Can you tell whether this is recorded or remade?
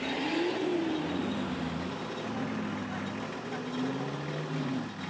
recorded